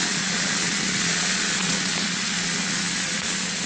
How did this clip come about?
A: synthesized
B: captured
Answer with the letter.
A